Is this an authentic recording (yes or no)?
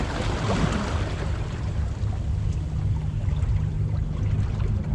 yes